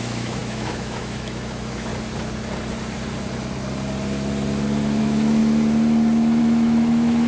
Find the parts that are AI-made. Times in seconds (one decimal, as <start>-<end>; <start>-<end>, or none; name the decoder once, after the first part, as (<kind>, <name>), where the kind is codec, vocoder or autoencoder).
0.0-1.9 (autoencoder, DAC-VAE); 5.0-5.4; 6.4-7.3